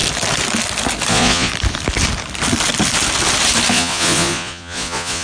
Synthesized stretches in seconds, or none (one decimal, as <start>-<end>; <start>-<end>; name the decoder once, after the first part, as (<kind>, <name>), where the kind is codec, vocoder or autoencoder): 1.1-1.5 (vocoder, Vocos); 3.7-5.2